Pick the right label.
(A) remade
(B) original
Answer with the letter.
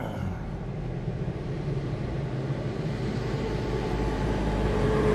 A